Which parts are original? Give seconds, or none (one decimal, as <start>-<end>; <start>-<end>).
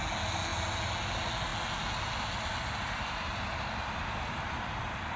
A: 0.0-5.2